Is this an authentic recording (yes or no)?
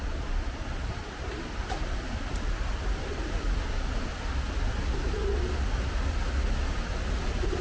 yes